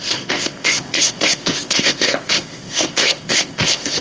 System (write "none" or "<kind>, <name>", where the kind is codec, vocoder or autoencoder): codec, ZipCodec